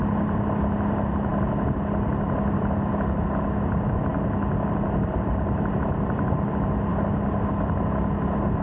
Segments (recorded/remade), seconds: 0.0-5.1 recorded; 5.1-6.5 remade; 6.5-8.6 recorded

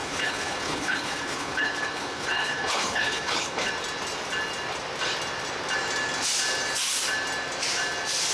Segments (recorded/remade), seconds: 0.0-3.7 remade; 3.7-8.3 recorded